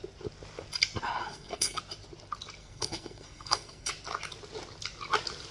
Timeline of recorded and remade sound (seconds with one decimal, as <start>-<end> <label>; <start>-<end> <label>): 0.0-1.2 recorded; 1.2-1.8 remade; 1.8-2.6 recorded; 2.6-3.9 remade; 3.9-5.5 recorded